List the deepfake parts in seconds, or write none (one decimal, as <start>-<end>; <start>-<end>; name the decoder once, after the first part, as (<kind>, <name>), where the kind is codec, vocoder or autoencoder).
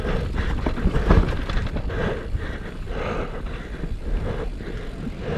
0.0-5.4 (vocoder, BigVGAN v2)